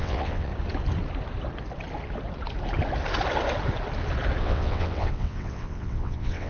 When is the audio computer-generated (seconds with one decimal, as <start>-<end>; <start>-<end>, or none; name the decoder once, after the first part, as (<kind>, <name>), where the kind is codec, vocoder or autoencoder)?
0.0-0.5 (vocoder, WaveNeXt); 4.4-6.5